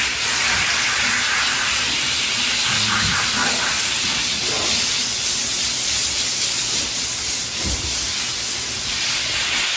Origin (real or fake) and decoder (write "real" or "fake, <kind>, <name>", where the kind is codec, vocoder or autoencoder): real